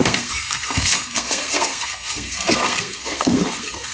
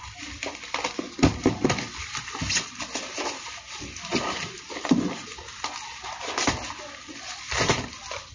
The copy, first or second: first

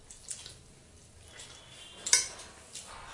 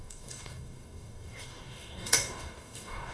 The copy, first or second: second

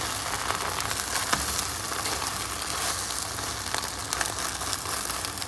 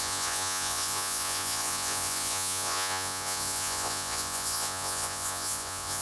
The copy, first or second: second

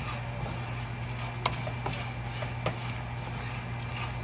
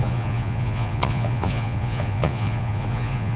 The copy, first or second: second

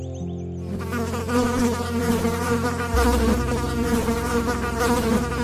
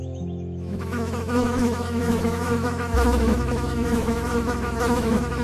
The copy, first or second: second